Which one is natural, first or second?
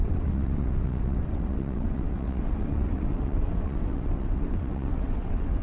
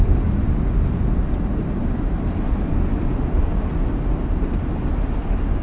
second